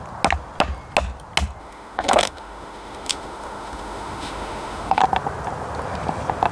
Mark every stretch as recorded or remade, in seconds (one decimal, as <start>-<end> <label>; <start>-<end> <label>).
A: 0.0-1.6 recorded; 1.6-5.0 remade; 5.0-6.5 recorded